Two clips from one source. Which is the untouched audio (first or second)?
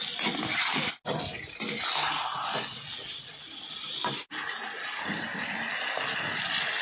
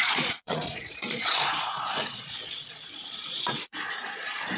first